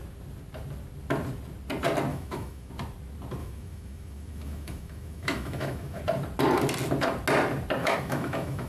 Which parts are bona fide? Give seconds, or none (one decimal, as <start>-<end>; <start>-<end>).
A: 0.0-2.1; 2.7-3.4; 6.0-7.8